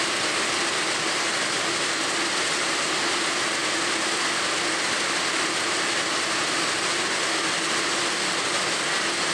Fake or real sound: real